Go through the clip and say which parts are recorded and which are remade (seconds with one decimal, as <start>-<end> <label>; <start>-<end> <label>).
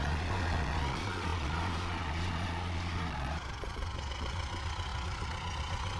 0.0-6.0 remade